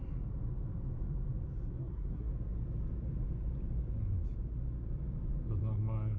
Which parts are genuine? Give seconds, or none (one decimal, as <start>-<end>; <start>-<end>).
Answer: 0.0-1.8; 2.3-6.2

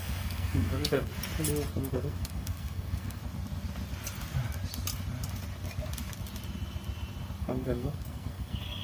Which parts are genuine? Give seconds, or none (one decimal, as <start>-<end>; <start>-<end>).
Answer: 1.1-1.8; 3.2-7.4

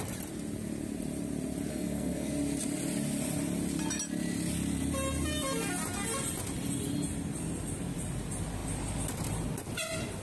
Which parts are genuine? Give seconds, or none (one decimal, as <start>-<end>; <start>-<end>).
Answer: 0.0-1.7; 2.3-10.2

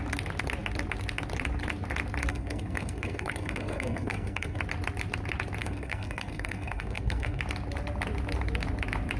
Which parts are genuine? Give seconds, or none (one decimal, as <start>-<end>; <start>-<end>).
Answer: 0.0-2.3; 4.6-5.6; 7.4-9.2

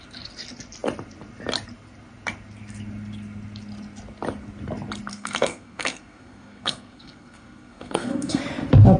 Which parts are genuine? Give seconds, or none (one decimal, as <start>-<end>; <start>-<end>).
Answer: 0.0-5.1; 8.4-9.0